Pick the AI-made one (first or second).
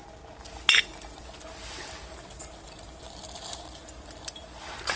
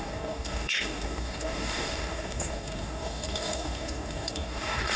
second